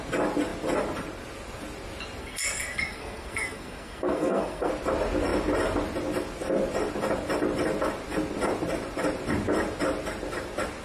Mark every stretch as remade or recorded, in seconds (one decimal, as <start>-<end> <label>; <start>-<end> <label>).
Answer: 0.0-2.2 recorded; 2.2-4.7 remade; 4.7-10.8 recorded